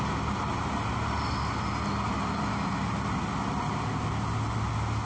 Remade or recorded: recorded